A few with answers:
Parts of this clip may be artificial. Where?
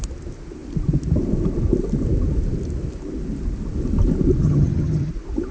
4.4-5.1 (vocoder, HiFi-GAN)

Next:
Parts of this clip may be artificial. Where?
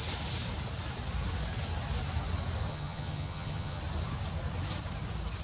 2.7-3.8 (vocoder, HiFi-GAN)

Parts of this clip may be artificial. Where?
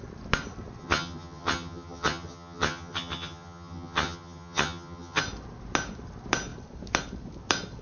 0.8-5.2 (vocoder, HiFi-GAN)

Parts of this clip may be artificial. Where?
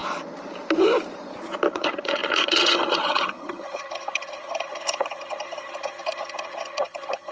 1.7-7.3 (vocoder, HiFi-GAN)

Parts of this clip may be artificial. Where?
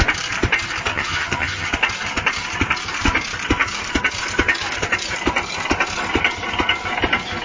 0.9-1.7 (vocoder, HiFi-GAN)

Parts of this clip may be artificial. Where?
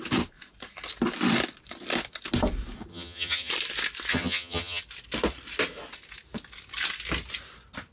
2.9-3.5 (vocoder, HiFi-GAN); 4.1-4.8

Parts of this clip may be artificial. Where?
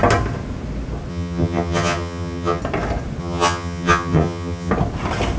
1.1-2.6 (vocoder, HiFi-GAN); 3.2-4.7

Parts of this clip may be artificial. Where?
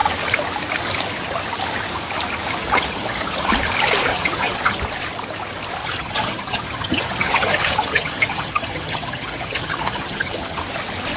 2.6-3.5 (vocoder, HiFi-GAN); 4.1-4.8; 5.8-10.6